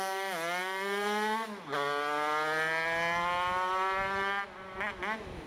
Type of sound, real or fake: real